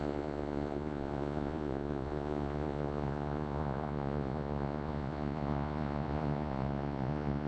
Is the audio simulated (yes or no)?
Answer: yes